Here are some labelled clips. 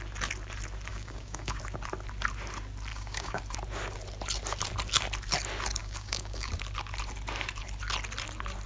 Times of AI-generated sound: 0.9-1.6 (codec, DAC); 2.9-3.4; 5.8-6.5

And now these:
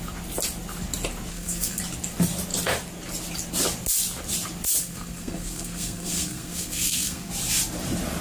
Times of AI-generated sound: 1.3-1.8 (codec, SNAC); 4.8-7.3

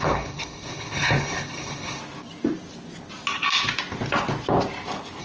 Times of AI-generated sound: 0.0-2.0 (codec, HILCodec)

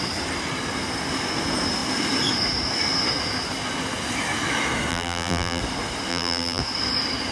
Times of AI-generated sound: 4.9-5.6 (vocoder, BigVGAN v2); 6.1-6.6

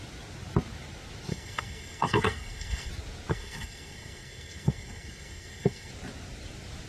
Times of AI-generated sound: 1.3-2.9 (codec, SNAC); 3.3-5.9